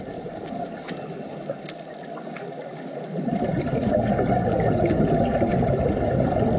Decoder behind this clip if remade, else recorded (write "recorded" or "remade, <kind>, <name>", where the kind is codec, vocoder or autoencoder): recorded